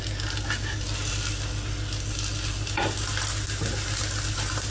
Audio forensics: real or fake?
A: real